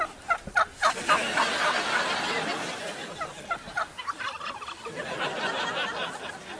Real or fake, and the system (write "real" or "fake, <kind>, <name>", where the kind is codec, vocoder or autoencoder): real